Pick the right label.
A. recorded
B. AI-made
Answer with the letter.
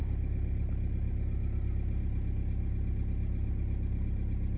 A